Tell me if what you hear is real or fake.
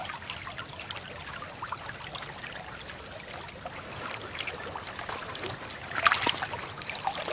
real